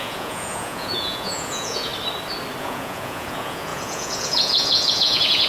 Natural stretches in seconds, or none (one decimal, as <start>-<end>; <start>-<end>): 1.9-2.6